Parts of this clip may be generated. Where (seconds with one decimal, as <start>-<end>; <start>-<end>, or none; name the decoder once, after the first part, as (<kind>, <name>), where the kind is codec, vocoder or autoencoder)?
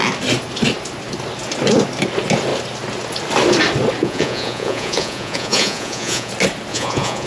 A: 4.0-6.3 (vocoder, Vocos); 6.7-7.3